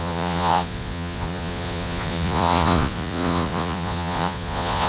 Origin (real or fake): fake